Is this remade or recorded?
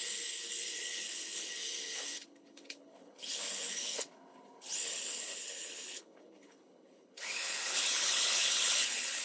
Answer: remade